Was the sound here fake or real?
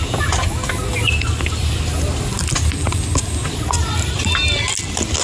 real